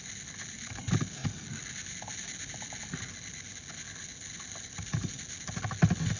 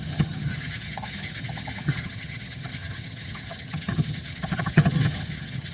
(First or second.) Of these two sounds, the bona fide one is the first